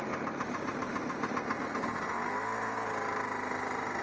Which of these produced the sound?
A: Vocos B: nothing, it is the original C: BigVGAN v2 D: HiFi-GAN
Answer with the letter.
B